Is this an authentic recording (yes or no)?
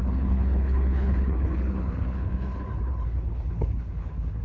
no